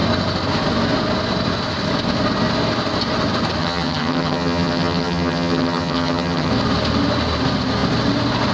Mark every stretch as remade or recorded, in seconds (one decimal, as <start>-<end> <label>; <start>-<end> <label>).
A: 0.0-3.6 recorded; 3.6-6.5 remade; 6.5-8.5 recorded